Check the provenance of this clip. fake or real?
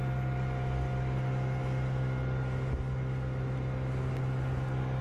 real